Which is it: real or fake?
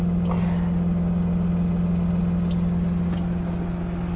real